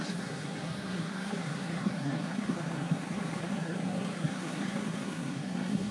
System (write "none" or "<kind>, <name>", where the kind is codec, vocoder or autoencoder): codec, SNAC